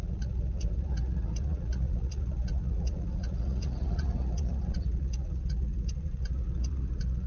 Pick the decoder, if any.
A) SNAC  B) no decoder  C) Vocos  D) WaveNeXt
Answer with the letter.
C